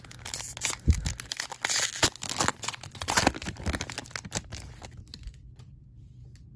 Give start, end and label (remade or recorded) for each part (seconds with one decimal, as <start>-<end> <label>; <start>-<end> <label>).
0.0-2.5 recorded; 2.5-3.2 remade; 3.2-6.6 recorded